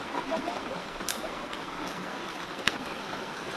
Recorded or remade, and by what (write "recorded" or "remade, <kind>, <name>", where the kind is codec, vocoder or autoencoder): remade, codec, SNAC